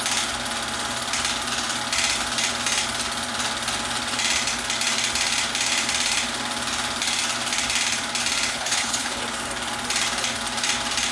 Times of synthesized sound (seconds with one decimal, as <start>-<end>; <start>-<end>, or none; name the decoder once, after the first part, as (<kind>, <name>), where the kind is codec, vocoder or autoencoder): 8.5-9.2 (codec, HILCodec)